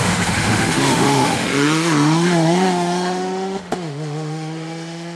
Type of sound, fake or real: fake